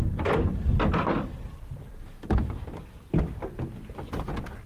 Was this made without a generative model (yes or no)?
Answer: yes